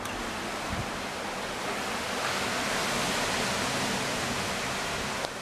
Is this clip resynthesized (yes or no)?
no